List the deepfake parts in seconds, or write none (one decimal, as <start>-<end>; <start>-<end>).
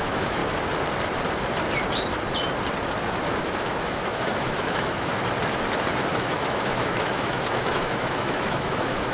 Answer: 0.0-0.4; 3.4-5.1; 6.1-9.1